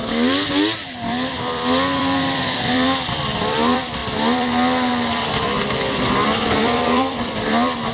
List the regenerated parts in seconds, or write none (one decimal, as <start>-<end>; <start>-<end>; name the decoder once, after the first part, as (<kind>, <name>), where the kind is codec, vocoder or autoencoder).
0.0-7.9 (vocoder, BigVGAN v2)